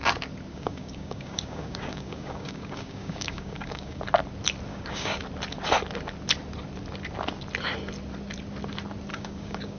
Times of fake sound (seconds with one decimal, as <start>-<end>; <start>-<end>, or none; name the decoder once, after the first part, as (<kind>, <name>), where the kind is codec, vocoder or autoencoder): 0.5-4.0 (codec, DAC); 4.7-5.2; 9.1-9.8